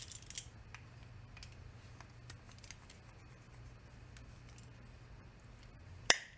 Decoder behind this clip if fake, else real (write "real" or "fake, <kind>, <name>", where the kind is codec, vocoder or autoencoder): real